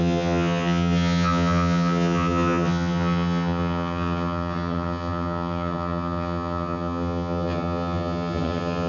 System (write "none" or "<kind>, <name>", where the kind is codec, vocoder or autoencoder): vocoder, HiFi-GAN